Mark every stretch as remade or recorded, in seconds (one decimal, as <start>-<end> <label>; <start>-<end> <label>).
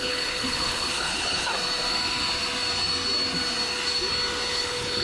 0.0-1.5 remade; 1.5-4.5 recorded; 4.5-5.0 remade